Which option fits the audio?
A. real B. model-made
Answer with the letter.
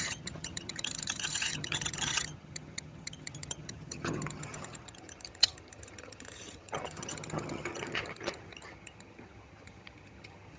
B